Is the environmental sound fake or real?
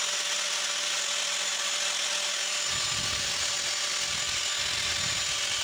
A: real